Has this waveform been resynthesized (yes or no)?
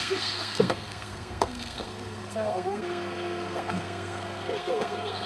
yes